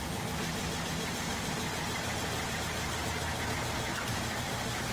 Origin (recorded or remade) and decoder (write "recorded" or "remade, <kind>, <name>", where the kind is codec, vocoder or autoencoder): recorded